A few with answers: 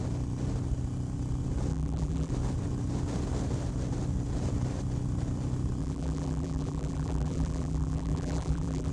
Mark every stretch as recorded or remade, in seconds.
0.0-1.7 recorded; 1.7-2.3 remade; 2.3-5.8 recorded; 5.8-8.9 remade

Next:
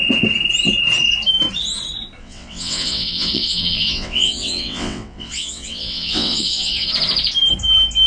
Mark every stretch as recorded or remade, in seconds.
0.0-2.2 recorded; 2.2-6.9 remade; 6.9-8.1 recorded

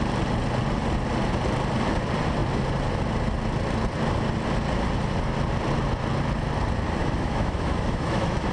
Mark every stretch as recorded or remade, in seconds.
0.0-7.0 recorded; 7.0-8.5 remade

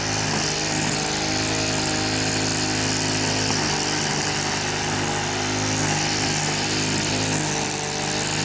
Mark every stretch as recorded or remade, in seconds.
0.0-8.4 recorded

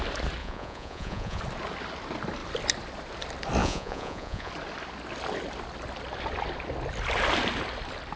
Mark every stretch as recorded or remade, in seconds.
0.0-0.4 recorded; 0.4-1.4 remade; 1.4-3.6 recorded; 3.6-4.5 remade; 4.5-8.2 recorded

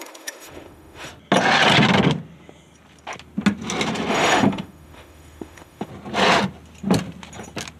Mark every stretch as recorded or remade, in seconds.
0.0-1.1 remade; 1.1-4.1 recorded; 4.1-5.9 remade; 5.9-7.8 recorded

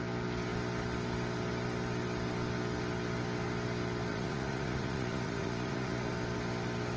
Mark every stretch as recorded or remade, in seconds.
0.0-4.1 recorded; 4.1-6.1 remade; 6.1-7.0 recorded

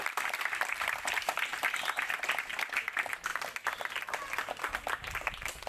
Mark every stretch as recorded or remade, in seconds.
0.0-5.7 recorded